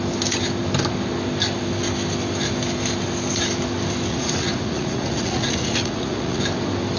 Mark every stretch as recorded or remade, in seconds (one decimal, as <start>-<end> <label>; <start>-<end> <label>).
0.0-4.1 recorded; 4.1-6.4 remade; 6.4-7.0 recorded